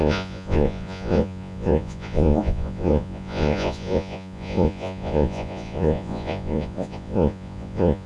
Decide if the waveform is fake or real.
fake